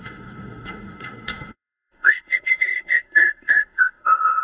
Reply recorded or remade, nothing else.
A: remade